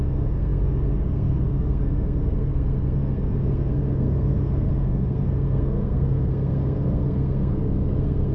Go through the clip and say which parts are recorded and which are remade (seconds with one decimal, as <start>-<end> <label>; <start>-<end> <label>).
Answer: 0.0-8.3 remade